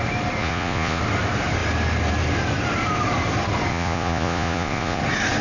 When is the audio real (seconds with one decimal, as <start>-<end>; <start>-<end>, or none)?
0.0-0.4; 1.0-3.7; 5.0-5.4